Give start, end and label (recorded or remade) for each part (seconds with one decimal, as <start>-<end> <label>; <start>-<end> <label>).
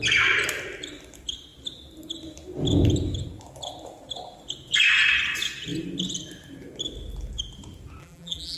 0.0-8.0 recorded; 8.0-8.6 remade